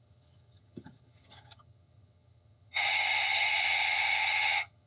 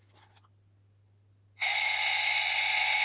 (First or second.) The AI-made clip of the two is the first